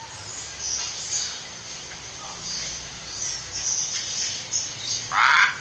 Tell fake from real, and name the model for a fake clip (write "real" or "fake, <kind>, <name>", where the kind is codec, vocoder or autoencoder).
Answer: real